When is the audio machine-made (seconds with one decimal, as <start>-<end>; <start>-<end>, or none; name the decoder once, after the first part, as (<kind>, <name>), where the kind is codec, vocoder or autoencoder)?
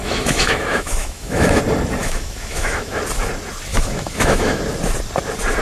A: 0.0-1.6 (autoencoder, DAC-VAE); 2.0-3.0; 3.7-4.6